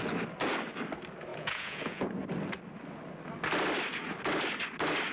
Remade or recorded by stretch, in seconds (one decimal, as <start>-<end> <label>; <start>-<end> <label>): 0.0-1.3 recorded; 1.3-2.1 remade; 2.1-5.1 recorded